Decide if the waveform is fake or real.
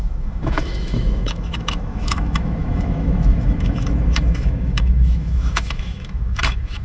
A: fake